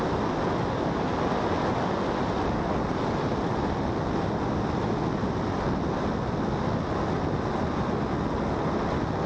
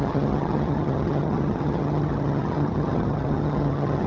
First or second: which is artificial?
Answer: second